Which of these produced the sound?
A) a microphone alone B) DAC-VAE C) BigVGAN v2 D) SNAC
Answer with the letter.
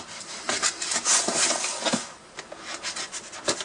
A